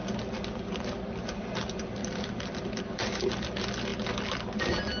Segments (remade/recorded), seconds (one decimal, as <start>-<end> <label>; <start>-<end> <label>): 0.0-2.0 recorded; 2.0-2.8 remade; 2.8-5.0 recorded